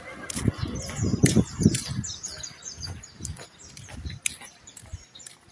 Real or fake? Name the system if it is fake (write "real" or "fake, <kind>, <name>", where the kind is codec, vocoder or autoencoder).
real